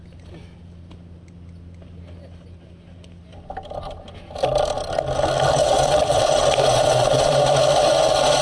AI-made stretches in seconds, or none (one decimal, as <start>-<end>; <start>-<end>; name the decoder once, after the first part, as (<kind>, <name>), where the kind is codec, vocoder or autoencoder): 5.6-6.3 (vocoder, WaveNeXt); 6.7-7.3